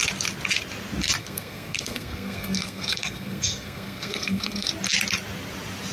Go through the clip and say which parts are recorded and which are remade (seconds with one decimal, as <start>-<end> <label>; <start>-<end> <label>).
0.0-1.2 recorded; 1.2-4.7 remade; 4.7-5.9 recorded